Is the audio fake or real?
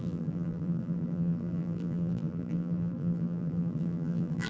fake